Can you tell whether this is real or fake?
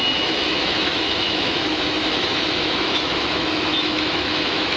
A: fake